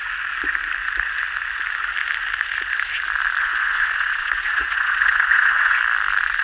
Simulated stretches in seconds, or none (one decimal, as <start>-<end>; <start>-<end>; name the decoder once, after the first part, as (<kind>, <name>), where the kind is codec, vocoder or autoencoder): 3.4-5.8 (vocoder, Vocos)